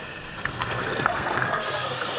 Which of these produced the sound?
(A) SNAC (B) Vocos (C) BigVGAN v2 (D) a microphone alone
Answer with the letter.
A